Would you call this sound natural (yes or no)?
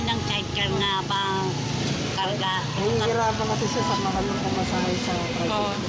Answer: yes